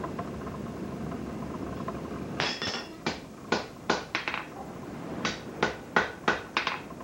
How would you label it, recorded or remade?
remade